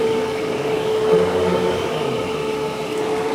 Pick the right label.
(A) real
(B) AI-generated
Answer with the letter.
B